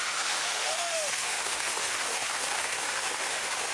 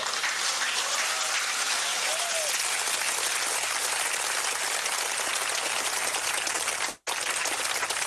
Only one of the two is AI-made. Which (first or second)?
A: first